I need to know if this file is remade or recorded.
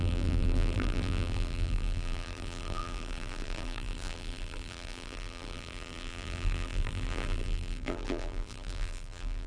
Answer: remade